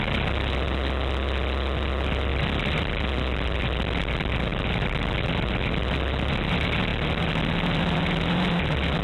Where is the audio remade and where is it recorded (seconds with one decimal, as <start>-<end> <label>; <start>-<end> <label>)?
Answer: 0.0-2.3 recorded; 2.3-2.9 remade; 2.9-6.9 recorded; 6.9-7.5 remade; 7.5-9.0 recorded